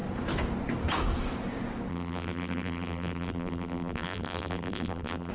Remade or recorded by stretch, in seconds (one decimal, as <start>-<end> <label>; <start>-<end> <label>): 0.0-1.9 recorded; 1.9-5.3 remade